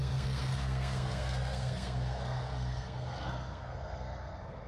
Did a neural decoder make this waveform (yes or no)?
yes